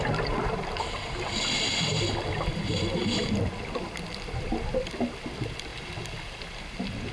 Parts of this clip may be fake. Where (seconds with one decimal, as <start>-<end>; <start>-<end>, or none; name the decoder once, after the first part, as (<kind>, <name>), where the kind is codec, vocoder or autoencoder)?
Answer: 0.0-5.7 (vocoder, BigVGAN v2); 6.6-7.1